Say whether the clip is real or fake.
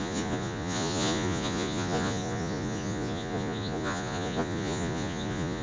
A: fake